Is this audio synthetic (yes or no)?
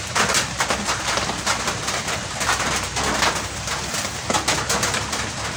no